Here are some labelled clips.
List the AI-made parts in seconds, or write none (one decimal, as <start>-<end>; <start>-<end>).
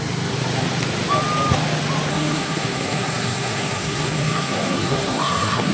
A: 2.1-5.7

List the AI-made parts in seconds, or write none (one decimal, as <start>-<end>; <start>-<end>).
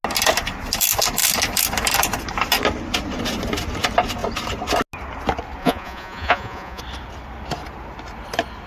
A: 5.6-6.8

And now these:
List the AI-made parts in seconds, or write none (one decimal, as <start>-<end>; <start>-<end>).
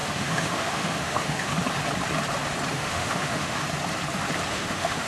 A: 0.0-1.5; 2.7-3.6; 4.5-5.1